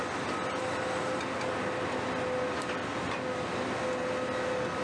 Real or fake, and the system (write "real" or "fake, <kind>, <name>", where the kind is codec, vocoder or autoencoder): real